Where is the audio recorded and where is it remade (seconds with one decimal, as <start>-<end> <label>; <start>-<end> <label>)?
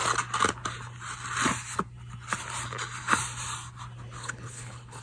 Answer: 0.0-4.2 recorded; 4.2-5.0 remade